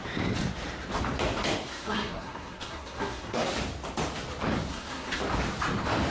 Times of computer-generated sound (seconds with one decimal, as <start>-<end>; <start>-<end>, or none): 1.7-3.5; 4.7-5.2